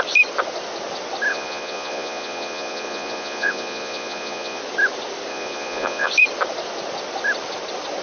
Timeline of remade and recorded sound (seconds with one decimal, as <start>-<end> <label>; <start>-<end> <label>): 0.0-1.3 recorded; 1.3-4.6 remade; 4.6-5.3 recorded; 5.3-6.1 remade; 6.1-8.0 recorded